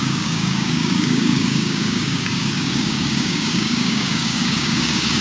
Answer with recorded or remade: remade